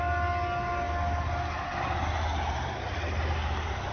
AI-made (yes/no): no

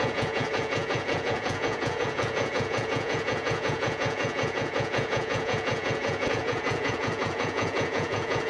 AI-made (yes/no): yes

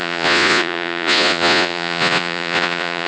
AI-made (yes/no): yes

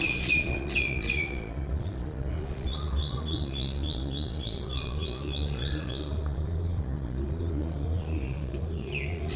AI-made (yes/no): yes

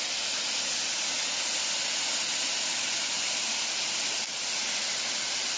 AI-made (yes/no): no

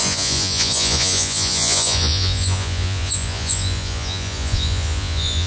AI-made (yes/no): yes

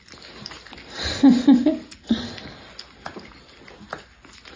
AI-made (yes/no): no